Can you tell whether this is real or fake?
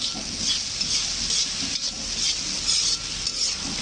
real